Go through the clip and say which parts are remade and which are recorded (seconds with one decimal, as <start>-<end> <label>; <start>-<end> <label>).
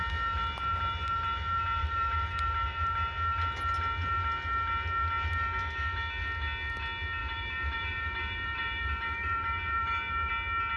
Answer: 0.0-1.8 recorded; 1.8-2.9 remade; 2.9-7.2 recorded; 7.2-10.3 remade; 10.3-10.8 recorded